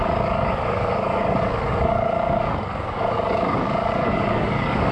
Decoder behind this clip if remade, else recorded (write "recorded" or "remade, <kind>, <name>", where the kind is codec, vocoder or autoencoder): remade, codec, DAC